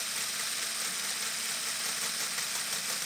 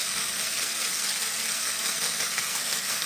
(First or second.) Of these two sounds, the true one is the first